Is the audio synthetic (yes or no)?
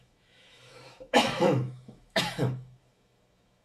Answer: yes